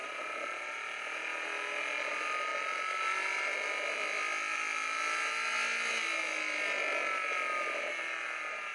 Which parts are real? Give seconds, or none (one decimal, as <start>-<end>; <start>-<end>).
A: 0.0-8.7

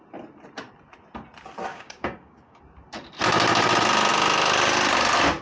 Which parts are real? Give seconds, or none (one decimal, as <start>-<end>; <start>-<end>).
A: 0.0-1.7; 2.6-5.4

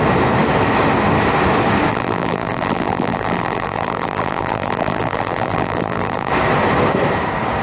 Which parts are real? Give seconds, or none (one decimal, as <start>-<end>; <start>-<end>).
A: 0.0-1.9; 6.3-7.6